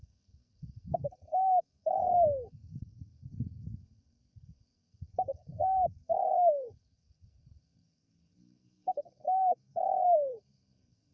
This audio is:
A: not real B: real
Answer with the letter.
A